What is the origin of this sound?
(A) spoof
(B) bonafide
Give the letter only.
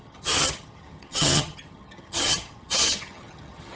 A